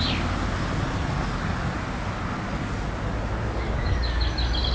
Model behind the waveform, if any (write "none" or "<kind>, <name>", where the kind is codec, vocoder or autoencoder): none